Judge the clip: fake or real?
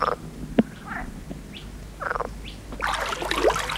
real